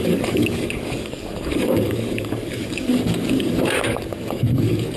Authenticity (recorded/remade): remade